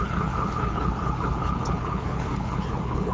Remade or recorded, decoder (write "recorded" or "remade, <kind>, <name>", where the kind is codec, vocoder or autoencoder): remade, codec, HILCodec